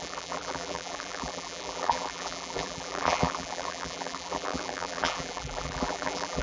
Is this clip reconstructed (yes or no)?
yes